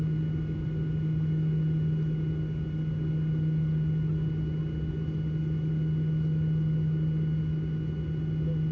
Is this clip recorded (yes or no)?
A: yes